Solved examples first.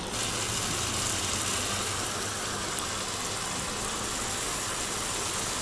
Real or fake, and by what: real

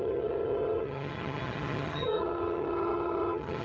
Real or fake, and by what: fake, vocoder, HiFi-GAN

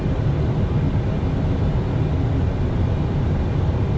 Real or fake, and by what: real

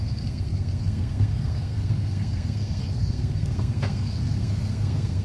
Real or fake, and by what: fake, codec, SNAC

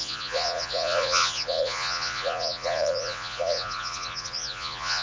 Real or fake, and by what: fake, vocoder, Vocos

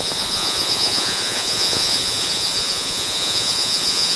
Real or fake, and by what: fake, vocoder, Vocos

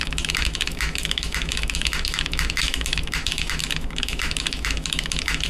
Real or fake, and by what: fake, autoencoder, DAC-VAE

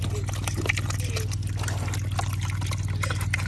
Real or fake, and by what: real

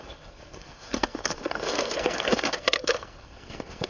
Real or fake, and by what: fake, codec, SNAC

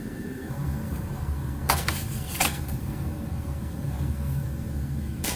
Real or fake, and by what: fake, codec, SNAC